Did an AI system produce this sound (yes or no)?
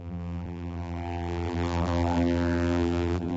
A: yes